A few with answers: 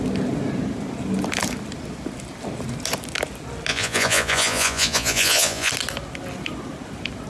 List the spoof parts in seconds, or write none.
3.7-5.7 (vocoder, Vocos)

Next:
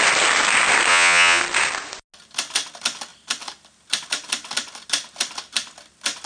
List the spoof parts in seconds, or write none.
0.9-1.4 (vocoder, Vocos)